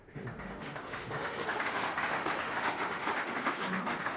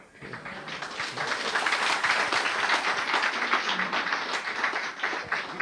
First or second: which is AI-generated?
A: first